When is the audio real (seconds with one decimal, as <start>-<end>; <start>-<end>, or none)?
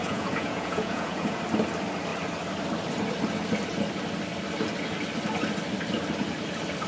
1.4-6.9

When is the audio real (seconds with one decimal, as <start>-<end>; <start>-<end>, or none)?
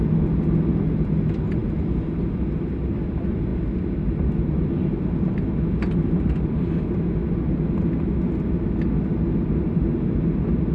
0.0-10.7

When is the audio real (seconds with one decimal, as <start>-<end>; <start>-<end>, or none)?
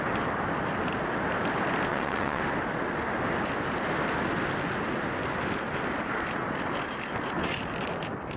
0.0-1.9; 2.4-8.4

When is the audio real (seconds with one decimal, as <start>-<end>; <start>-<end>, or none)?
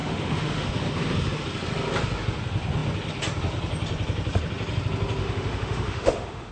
0.7-5.2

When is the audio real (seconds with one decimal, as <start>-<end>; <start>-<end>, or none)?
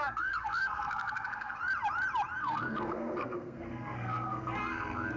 1.6-2.4